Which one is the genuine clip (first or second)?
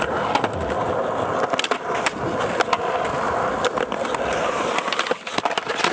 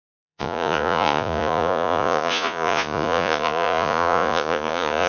first